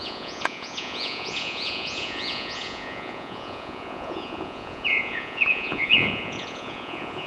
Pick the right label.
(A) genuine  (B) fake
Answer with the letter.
B